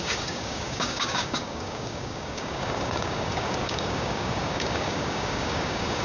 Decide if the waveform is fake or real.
fake